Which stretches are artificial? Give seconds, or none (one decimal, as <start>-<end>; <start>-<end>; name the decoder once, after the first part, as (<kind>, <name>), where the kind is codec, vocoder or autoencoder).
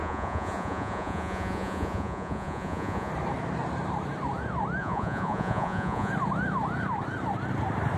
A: 0.0-3.1 (vocoder, Vocos); 4.8-6.1